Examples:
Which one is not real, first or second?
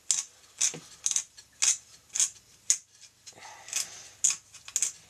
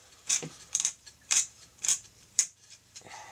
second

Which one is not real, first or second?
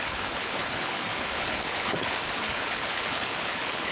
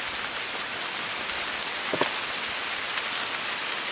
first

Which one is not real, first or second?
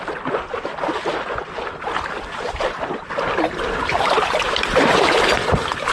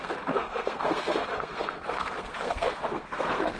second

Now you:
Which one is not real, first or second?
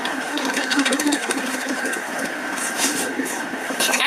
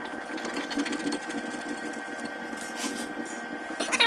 first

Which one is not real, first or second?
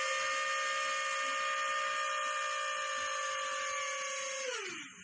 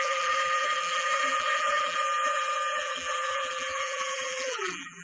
second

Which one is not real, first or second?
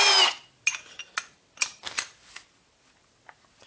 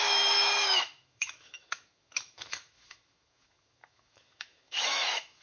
second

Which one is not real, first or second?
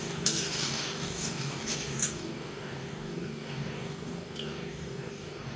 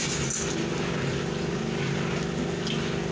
first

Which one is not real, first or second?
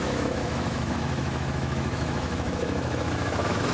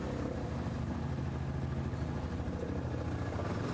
first